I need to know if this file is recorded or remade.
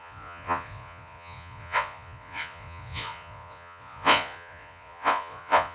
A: remade